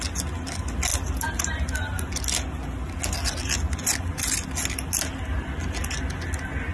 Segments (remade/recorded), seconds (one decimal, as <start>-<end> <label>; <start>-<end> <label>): 0.0-6.7 recorded